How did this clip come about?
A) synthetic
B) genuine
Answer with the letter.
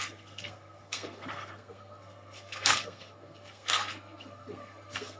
A